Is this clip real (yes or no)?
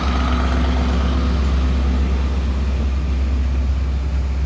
yes